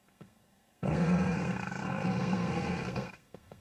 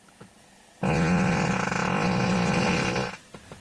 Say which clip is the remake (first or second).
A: first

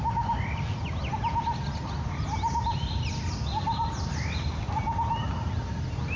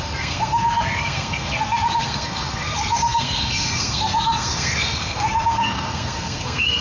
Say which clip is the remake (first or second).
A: second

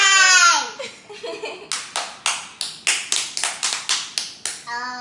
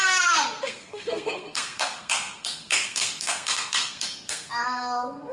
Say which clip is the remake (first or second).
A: second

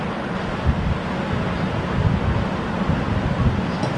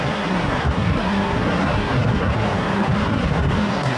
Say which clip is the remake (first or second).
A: second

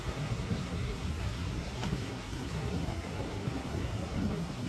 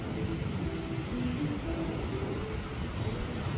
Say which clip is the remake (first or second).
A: first